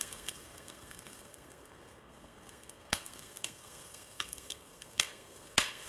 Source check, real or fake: fake